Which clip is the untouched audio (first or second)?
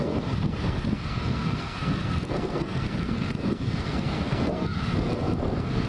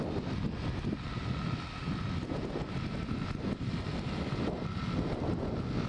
second